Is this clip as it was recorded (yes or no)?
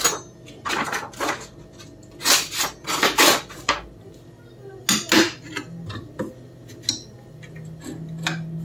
yes